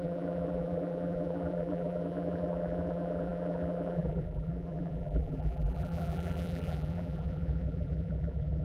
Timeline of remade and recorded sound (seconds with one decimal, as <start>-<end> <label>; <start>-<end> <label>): 0.0-8.6 remade